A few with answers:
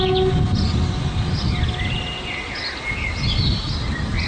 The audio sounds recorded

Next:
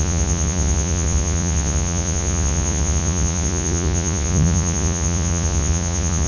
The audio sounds remade